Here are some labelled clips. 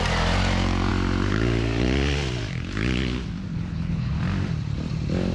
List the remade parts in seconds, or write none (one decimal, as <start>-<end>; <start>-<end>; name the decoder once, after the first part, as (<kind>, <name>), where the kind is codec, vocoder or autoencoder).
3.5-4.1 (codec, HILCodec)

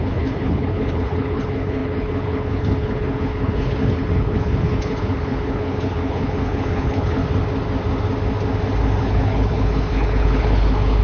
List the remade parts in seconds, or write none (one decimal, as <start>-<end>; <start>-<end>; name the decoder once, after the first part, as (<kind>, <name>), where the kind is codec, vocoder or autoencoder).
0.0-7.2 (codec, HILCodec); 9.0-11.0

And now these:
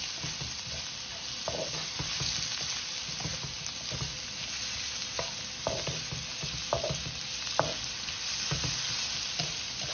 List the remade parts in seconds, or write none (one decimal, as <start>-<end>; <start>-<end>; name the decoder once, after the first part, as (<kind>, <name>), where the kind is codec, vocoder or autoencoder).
none